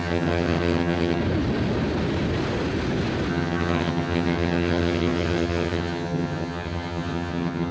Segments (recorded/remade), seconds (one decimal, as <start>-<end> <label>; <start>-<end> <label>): 0.0-1.2 remade; 1.2-3.3 recorded; 3.3-7.7 remade